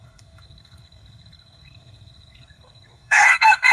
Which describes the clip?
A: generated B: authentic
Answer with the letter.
A